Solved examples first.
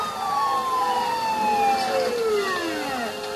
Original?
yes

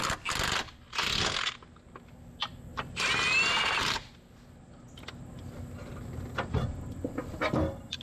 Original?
yes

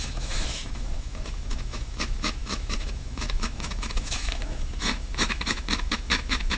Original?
no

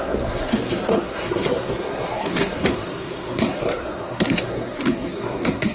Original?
no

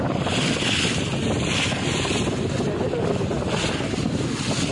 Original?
yes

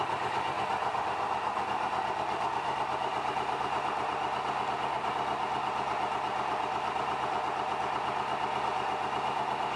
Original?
yes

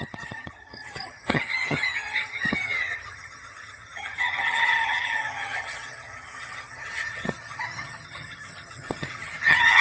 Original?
no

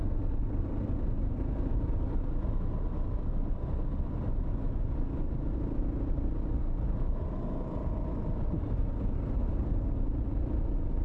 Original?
yes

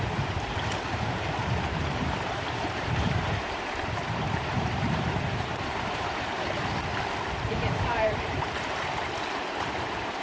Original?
no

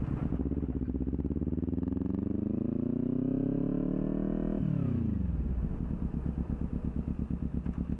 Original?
yes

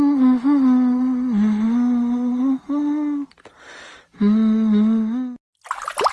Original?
yes